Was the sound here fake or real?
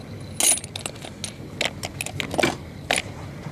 real